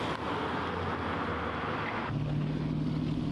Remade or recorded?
recorded